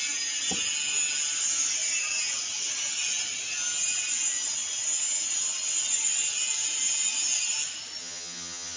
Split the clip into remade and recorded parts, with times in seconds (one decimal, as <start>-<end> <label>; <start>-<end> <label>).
0.0-8.0 recorded; 8.0-8.8 remade